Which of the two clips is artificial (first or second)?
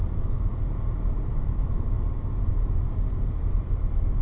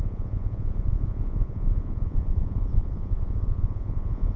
second